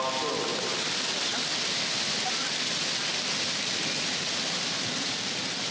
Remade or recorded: recorded